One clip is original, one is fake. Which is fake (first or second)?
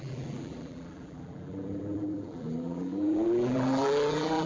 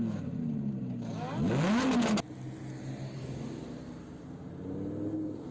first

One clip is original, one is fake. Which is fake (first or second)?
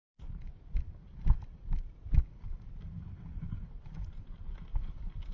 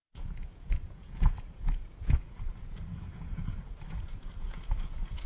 second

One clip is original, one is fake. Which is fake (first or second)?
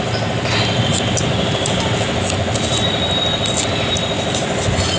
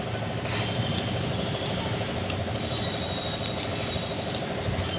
second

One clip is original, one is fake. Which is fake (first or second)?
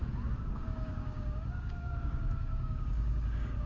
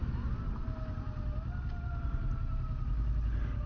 first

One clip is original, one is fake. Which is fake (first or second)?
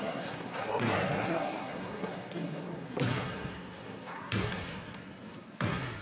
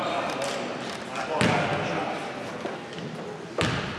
first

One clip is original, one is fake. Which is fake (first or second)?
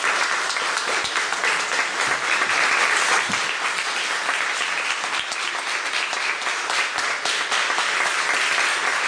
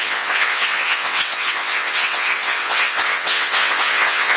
second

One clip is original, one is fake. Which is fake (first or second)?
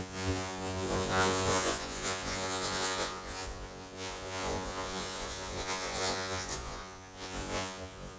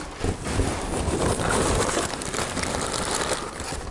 first